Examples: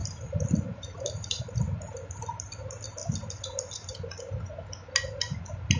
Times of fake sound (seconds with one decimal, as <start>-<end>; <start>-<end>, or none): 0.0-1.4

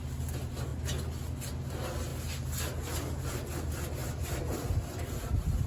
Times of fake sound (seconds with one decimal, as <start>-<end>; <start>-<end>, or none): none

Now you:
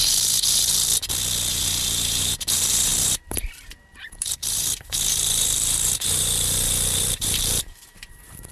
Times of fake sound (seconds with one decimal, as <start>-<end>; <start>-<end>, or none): 0.0-0.9; 1.5-8.5

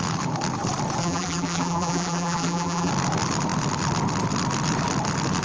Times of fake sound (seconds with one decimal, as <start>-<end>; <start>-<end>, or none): 1.0-2.9

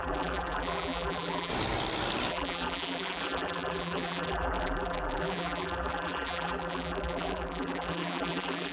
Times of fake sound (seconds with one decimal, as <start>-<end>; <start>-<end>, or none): 0.0-1.5; 2.3-8.7